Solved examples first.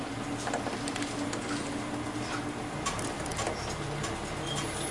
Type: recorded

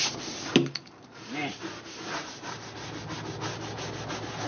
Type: recorded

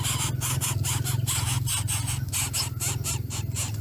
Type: recorded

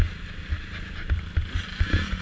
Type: recorded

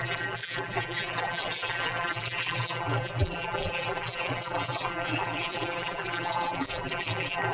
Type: remade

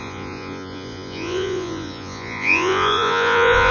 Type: remade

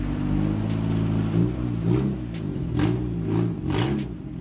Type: recorded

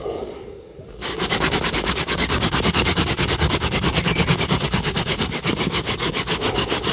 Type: remade